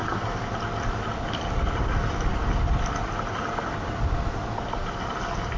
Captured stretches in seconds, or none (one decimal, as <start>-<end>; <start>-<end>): 0.0-5.6